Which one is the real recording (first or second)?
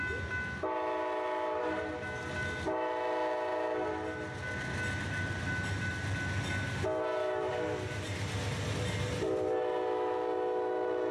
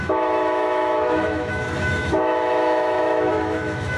first